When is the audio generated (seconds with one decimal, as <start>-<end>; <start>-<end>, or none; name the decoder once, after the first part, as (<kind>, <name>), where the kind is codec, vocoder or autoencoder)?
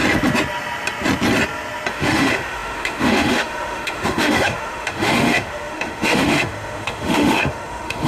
1.9-8.1 (autoencoder, DAC-VAE)